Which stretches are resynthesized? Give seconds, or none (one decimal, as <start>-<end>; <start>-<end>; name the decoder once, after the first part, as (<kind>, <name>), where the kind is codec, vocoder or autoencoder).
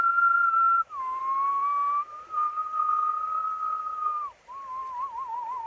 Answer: 0.5-1.2 (autoencoder, DAC-VAE)